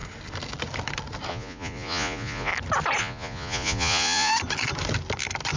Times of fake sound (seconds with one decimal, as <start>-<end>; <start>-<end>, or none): 1.3-2.5; 3.0-4.3